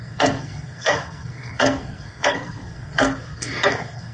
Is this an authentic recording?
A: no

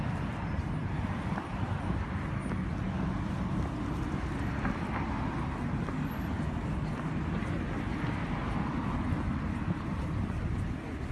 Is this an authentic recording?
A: yes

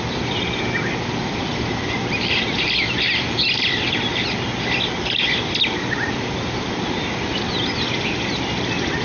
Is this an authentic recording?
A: yes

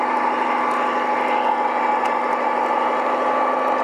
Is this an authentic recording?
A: yes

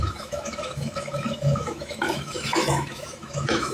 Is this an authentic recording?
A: no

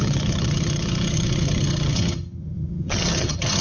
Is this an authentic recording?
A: no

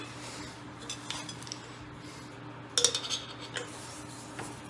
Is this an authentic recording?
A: yes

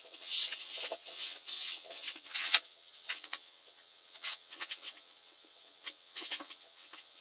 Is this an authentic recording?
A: no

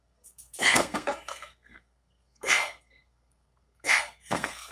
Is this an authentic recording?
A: no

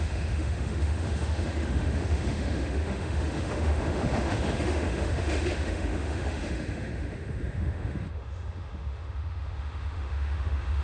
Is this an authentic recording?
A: no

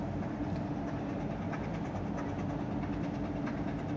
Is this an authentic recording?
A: yes